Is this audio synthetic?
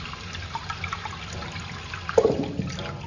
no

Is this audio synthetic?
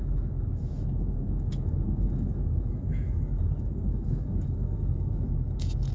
yes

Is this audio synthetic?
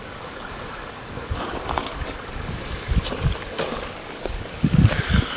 yes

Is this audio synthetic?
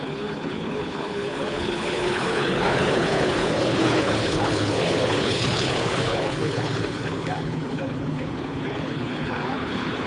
yes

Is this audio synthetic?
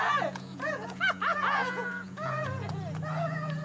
yes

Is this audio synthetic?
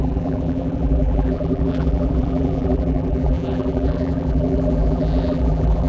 yes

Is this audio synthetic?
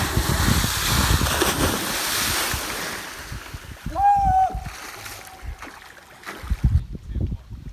no